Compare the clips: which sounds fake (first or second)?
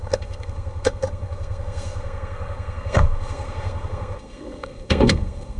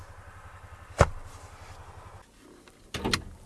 first